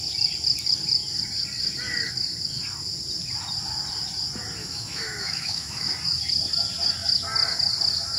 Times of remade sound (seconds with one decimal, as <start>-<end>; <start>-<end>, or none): 4.6-5.9